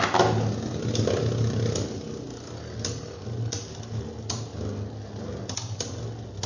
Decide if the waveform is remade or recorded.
recorded